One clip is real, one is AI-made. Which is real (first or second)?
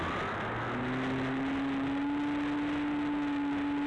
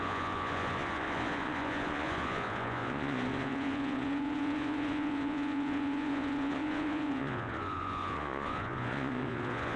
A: first